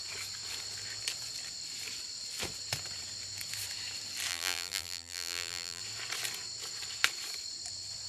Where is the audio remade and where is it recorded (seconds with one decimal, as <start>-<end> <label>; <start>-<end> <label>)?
0.0-4.3 recorded; 4.3-5.8 remade; 5.8-8.1 recorded